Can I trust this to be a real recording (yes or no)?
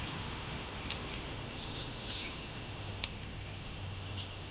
no